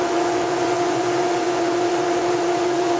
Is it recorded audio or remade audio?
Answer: remade